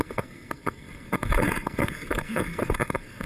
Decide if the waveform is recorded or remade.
remade